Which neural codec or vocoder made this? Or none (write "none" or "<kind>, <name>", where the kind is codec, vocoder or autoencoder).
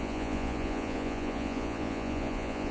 vocoder, Vocos